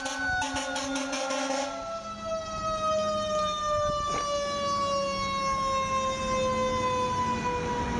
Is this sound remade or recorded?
recorded